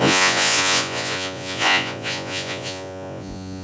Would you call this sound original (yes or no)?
no